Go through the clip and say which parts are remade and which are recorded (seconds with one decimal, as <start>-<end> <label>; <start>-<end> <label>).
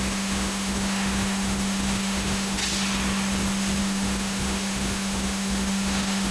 0.0-2.6 remade; 2.6-3.8 recorded; 3.8-6.3 remade